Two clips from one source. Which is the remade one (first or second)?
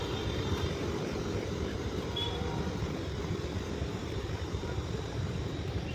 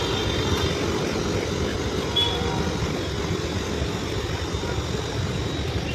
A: first